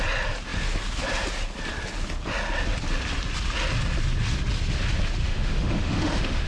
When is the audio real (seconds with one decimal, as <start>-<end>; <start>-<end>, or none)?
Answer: 0.0-5.2